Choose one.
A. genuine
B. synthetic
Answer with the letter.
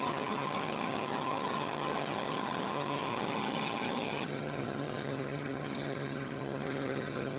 B